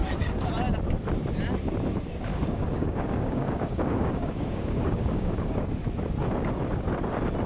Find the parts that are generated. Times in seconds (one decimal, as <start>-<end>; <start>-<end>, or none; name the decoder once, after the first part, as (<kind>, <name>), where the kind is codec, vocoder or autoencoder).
0.0-0.5 (codec, DAC); 2.3-5.7